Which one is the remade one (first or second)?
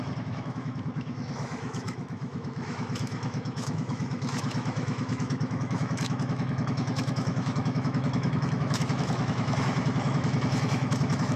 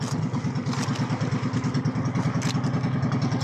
first